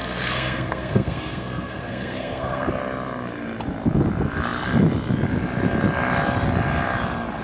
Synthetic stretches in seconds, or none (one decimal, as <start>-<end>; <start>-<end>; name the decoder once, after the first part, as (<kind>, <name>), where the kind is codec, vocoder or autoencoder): 0.0-2.7 (codec, SNAC)